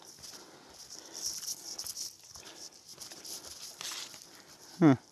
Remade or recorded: remade